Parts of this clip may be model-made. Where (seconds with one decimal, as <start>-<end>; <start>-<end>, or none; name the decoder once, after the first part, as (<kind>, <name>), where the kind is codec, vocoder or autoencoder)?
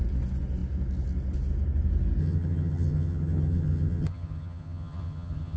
2.2-5.6 (vocoder, HiFi-GAN)